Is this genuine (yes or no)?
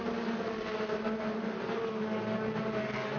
yes